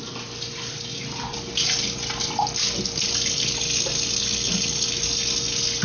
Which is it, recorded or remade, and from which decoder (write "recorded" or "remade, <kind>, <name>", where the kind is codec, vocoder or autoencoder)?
recorded